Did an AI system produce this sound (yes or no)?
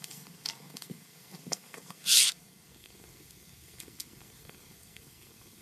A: yes